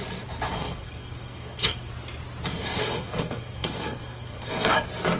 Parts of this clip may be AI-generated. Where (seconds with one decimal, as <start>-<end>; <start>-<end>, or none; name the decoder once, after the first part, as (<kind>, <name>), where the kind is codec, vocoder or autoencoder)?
0.5-1.9 (codec, SNAC); 2.5-4.8